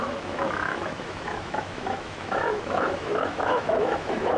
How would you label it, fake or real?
fake